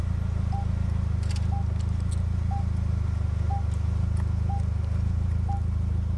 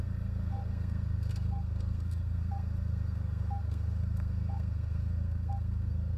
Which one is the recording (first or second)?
first